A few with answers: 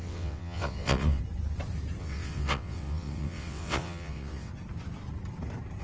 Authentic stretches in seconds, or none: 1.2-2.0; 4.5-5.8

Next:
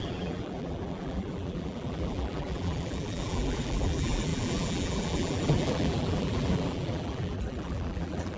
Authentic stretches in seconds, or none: none

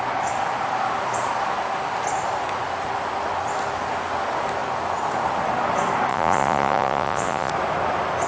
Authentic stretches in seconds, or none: 0.0-6.1; 7.5-8.3

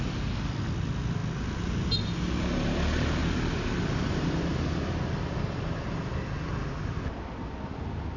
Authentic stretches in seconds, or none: 0.0-8.2